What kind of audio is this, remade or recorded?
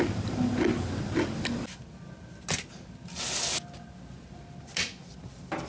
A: recorded